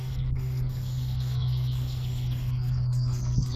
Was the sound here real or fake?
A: fake